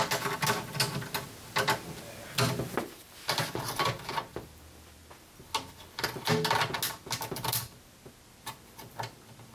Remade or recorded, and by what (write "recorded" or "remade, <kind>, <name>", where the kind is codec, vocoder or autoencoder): recorded